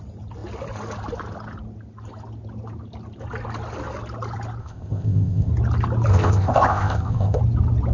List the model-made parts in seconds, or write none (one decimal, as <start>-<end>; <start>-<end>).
4.6-5.5; 6.1-7.4